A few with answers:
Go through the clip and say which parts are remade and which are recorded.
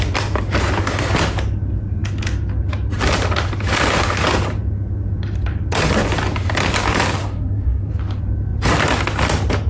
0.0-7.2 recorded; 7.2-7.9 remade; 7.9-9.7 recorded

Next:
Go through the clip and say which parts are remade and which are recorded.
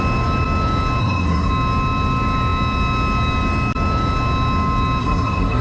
0.0-1.0 recorded; 1.0-1.5 remade; 1.5-5.0 recorded; 5.0-5.6 remade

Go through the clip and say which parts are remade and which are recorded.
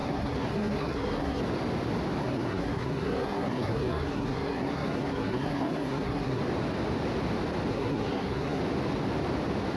0.0-1.4 remade; 1.4-2.2 recorded; 2.2-6.4 remade; 6.4-7.7 recorded; 7.7-8.6 remade; 8.6-9.8 recorded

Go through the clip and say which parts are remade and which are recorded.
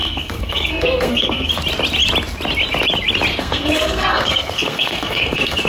0.0-1.5 remade; 1.5-3.3 recorded; 3.3-5.7 remade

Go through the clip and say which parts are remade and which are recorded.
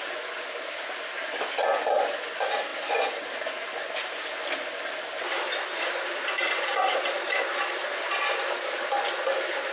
0.0-9.7 recorded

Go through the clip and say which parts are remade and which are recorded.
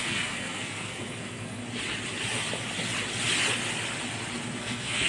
0.0-1.6 remade; 1.6-4.6 recorded; 4.6-5.1 remade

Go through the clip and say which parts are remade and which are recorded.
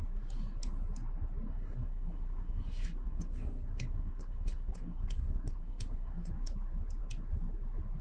0.0-1.5 recorded; 1.5-6.3 remade; 6.3-8.0 recorded